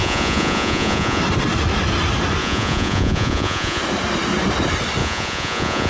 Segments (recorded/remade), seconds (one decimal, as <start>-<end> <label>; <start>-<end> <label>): 0.0-1.2 remade; 1.2-2.4 recorded; 2.4-3.8 remade; 3.8-5.0 recorded; 5.0-5.9 remade